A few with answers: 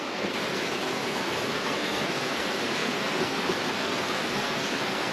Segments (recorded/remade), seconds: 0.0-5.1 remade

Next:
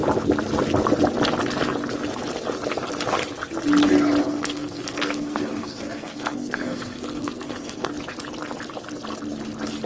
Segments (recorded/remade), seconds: 0.0-4.2 recorded; 4.2-7.9 remade; 7.9-9.9 recorded

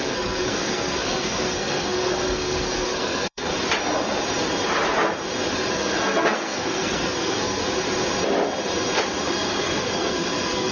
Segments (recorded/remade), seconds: 0.0-3.5 remade; 3.5-5.7 recorded; 5.7-7.6 remade; 7.6-9.2 recorded; 9.2-10.7 remade

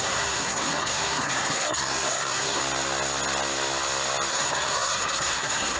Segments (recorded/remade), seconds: 0.0-2.6 remade; 2.6-4.3 recorded; 4.3-5.8 remade

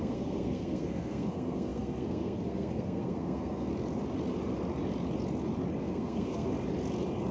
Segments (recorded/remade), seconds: 0.0-3.7 remade; 3.7-5.8 recorded; 5.8-6.5 remade; 6.5-7.3 recorded

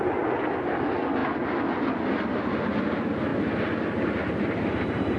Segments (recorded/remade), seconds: 0.0-5.2 recorded

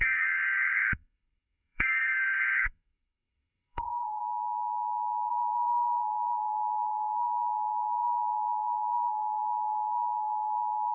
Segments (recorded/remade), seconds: 0.0-4.2 remade; 4.2-5.3 recorded; 5.3-10.9 remade